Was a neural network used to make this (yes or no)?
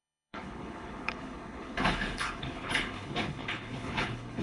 yes